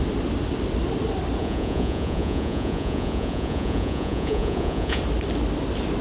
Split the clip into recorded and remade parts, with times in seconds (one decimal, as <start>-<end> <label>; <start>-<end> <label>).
0.0-1.4 recorded; 1.4-5.0 remade; 5.0-6.0 recorded